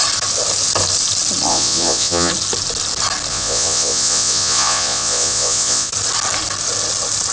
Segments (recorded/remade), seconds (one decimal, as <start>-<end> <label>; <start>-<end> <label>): 0.0-1.5 recorded; 1.5-2.3 remade; 2.3-3.3 recorded; 3.3-5.9 remade; 5.9-7.3 recorded